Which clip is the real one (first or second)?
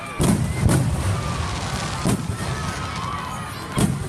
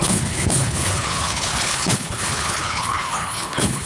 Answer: first